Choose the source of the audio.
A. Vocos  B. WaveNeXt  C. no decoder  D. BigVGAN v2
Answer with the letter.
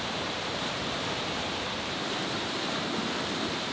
D